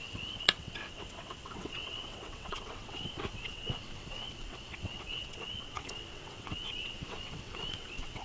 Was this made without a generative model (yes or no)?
no